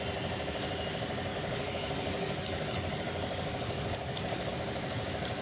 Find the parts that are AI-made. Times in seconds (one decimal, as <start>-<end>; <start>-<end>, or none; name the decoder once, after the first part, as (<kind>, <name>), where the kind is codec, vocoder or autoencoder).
1.3-4.5 (codec, DAC)